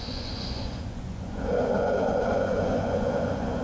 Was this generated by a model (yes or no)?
yes